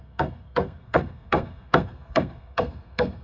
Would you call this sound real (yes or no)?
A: no